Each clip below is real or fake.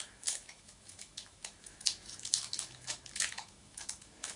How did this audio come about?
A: fake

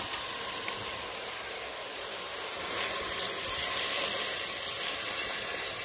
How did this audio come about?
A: fake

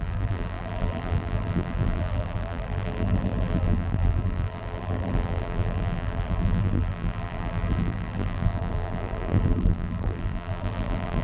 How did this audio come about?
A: fake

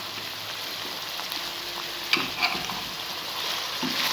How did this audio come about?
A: real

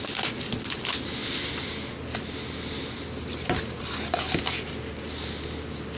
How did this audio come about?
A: real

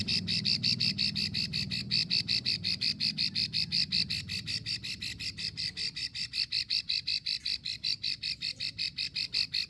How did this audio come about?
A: real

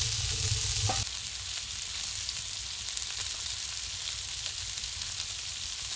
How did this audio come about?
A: real